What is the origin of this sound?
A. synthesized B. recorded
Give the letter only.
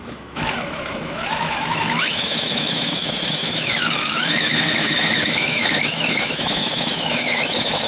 A